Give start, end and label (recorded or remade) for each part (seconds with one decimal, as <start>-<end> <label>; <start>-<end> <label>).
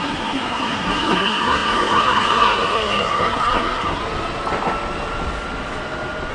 0.0-4.0 remade; 4.0-6.3 recorded